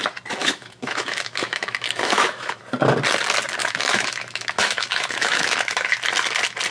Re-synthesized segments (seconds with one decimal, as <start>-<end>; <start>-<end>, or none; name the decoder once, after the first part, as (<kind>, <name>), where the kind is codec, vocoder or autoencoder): 0.4-2.6 (autoencoder, DAC-VAE); 3.6-5.9